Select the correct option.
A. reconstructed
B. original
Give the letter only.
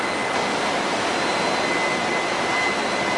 B